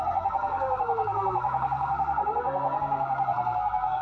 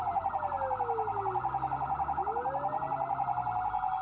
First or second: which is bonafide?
second